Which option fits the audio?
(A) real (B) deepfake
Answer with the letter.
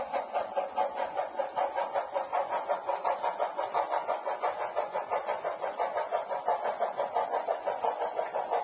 B